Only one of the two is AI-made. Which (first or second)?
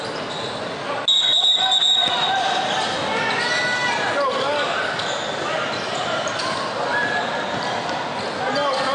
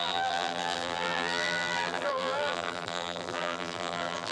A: second